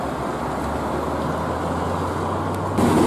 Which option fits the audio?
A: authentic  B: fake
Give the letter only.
A